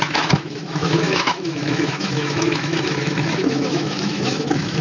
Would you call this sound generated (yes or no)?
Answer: yes